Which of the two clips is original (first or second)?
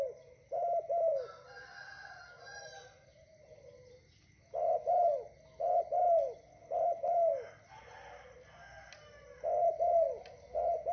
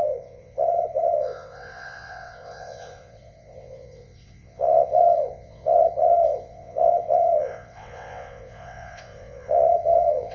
first